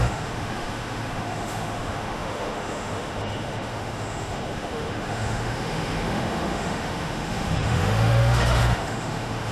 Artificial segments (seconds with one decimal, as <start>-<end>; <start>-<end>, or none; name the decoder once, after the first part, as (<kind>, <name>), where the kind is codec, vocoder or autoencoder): 0.0-9.5 (autoencoder, DAC-VAE)